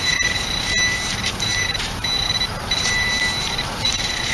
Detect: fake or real fake